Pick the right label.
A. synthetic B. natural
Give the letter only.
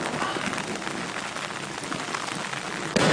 B